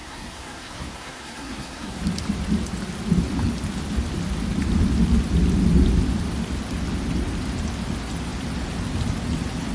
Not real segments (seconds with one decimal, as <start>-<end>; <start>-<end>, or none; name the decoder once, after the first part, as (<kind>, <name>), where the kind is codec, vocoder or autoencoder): 0.0-2.0 (codec, SNAC)